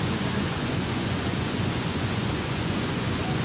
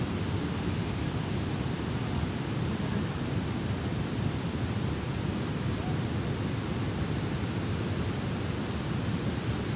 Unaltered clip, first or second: second